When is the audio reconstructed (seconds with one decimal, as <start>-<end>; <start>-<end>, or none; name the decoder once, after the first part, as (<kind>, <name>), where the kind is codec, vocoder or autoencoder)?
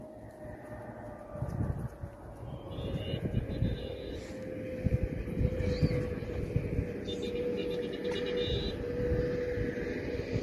4.9-5.6 (vocoder, BigVGAN v2)